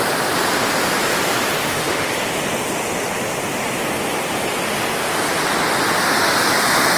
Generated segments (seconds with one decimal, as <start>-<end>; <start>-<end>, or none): 1.6-2.1